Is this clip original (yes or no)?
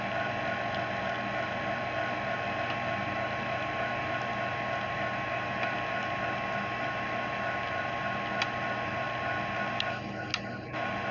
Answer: yes